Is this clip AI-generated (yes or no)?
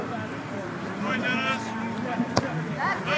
yes